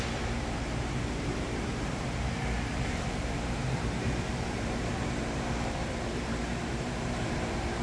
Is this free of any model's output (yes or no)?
no